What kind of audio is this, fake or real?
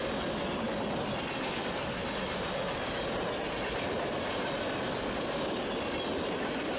real